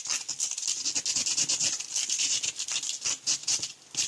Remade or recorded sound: recorded